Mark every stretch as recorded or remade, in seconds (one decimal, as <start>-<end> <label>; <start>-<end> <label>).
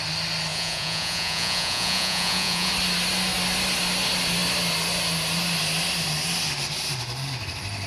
0.0-0.5 recorded; 0.5-2.7 remade; 2.7-7.9 recorded